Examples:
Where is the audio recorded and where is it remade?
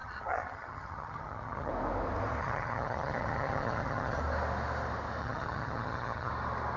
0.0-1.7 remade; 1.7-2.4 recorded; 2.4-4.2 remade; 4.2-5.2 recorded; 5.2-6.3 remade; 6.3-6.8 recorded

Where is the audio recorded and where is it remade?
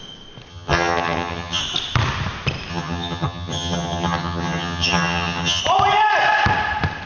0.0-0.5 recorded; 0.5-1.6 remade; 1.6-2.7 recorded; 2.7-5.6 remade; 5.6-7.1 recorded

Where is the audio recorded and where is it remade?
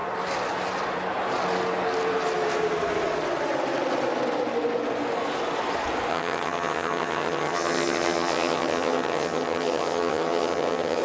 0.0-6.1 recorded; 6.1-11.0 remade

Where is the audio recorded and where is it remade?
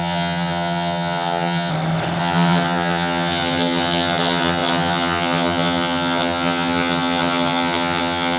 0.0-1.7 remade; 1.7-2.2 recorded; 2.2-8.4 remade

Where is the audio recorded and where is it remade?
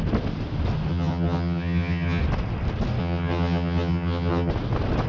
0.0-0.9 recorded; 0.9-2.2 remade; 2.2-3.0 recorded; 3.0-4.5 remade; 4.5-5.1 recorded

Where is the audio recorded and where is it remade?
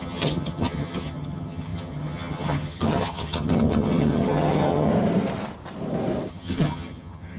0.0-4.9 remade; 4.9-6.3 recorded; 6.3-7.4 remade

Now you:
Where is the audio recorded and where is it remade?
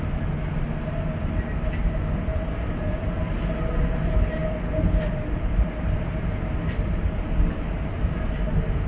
0.0-8.9 recorded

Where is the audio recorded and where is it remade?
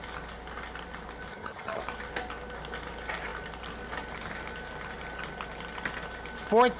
0.0-1.3 recorded; 1.3-1.8 remade; 1.8-6.8 recorded